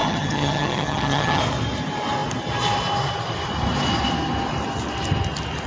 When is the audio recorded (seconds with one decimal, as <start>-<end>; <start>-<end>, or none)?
1.4-5.7